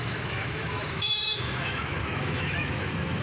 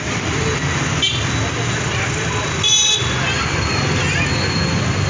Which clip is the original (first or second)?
second